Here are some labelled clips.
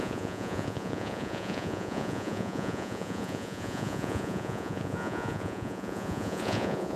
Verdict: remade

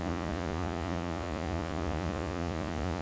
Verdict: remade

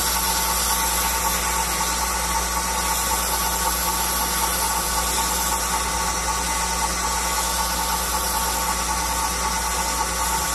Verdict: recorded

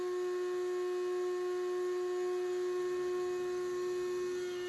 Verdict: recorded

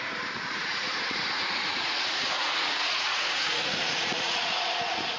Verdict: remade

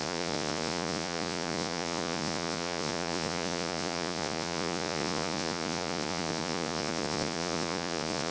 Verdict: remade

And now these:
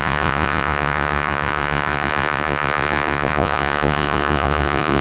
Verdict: remade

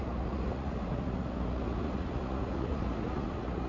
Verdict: remade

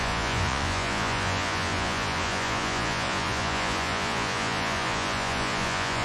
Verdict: remade